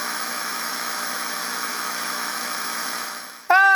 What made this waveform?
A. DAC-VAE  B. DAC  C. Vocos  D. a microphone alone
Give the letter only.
A